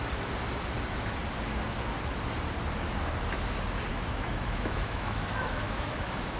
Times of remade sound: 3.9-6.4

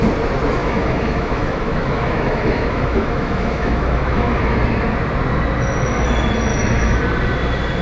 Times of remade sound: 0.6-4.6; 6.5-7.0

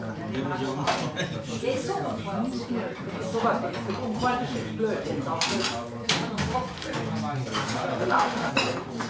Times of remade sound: 7.9-8.5

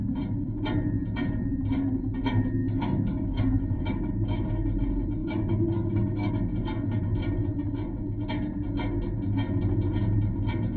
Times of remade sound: 2.6-4.5; 5.2-6.3

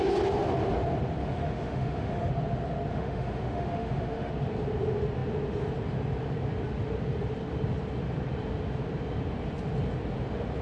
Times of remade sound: 1.2-2.3; 2.9-4.3